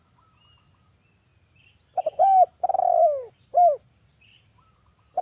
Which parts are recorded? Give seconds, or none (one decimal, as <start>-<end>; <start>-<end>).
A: 0.0-5.2